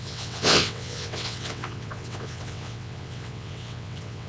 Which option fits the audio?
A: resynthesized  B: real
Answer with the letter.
A